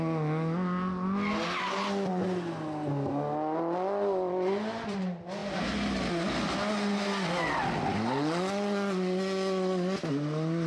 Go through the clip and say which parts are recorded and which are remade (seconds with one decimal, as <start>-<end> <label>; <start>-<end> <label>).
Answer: 0.0-10.7 recorded